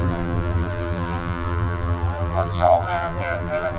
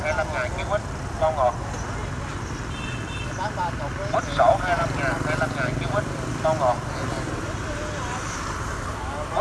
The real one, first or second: second